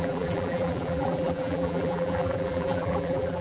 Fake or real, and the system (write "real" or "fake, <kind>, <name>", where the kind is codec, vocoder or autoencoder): fake, vocoder, BigVGAN v2